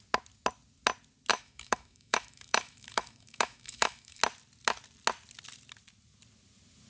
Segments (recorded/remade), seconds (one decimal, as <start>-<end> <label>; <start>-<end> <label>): 0.0-1.3 recorded; 1.3-4.2 remade; 4.2-6.9 recorded